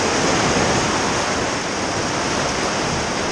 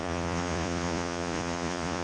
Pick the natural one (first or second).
first